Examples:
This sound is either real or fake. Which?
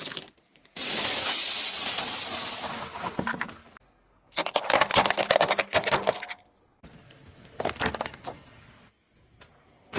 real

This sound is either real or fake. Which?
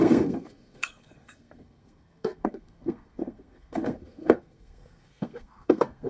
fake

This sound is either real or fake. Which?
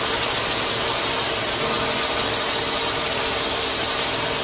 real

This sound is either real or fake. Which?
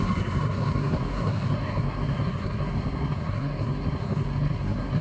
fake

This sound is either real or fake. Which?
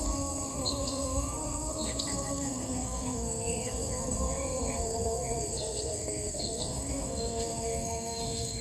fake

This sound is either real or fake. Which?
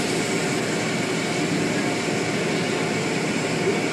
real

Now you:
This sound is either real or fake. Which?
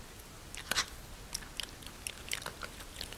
real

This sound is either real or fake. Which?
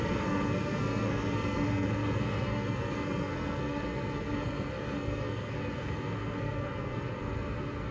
fake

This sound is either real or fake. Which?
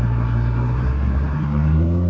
fake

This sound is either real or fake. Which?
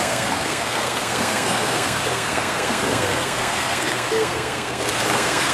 fake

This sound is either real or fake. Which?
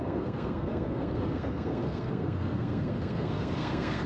fake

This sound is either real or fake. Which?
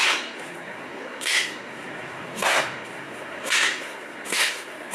fake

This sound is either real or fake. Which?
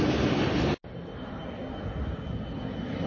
real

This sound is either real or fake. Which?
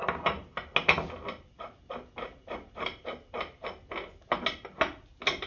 real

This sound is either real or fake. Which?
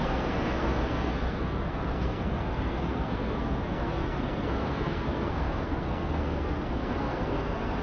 fake